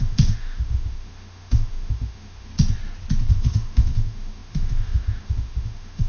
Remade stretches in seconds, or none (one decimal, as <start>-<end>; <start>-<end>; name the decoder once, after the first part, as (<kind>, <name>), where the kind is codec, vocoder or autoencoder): 0.0-2.5 (autoencoder, DAC-VAE); 3.3-6.1